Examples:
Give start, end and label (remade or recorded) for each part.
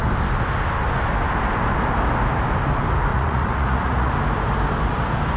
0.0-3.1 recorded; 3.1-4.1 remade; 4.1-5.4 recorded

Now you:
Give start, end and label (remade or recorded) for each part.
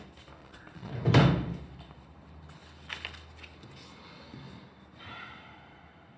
0.0-0.4 recorded; 0.4-0.9 remade; 0.9-6.2 recorded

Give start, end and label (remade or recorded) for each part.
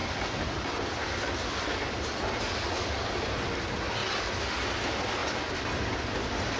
0.0-6.6 recorded